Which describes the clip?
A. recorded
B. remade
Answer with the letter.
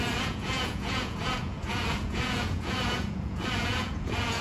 B